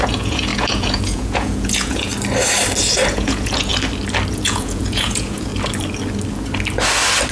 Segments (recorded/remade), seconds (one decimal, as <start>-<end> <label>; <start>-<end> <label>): 0.0-2.1 remade; 2.1-3.1 recorded; 3.1-3.7 remade; 3.7-4.3 recorded; 4.3-5.5 remade; 5.5-7.3 recorded